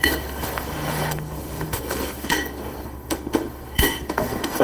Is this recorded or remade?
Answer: remade